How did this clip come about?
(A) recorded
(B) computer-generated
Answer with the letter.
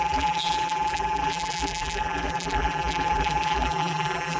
B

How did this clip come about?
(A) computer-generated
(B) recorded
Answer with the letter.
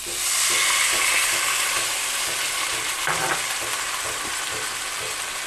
B